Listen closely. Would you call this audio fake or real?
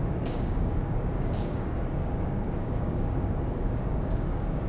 fake